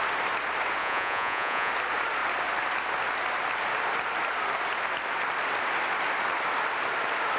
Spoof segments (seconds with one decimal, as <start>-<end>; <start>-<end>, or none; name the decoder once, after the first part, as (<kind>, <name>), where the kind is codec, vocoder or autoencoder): 0.8-1.7 (vocoder, Vocos)